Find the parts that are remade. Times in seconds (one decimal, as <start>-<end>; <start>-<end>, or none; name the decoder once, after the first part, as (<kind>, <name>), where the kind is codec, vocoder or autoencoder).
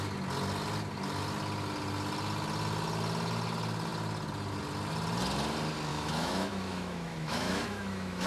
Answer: 5.9-8.3 (autoencoder, DAC-VAE)